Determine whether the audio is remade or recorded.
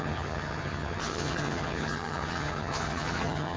remade